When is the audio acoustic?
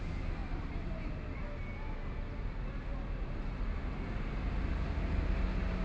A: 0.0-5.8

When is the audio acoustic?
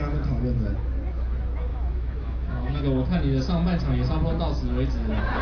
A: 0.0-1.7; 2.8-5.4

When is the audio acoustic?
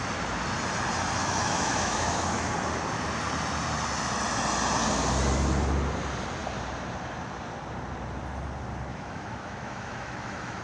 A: 0.0-1.2; 2.5-8.9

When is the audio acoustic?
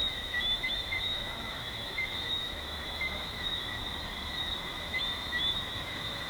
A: 3.8-4.7